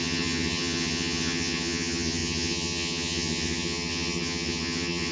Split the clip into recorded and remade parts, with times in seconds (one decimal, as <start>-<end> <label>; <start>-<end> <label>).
0.0-5.1 remade